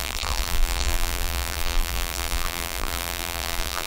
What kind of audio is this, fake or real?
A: fake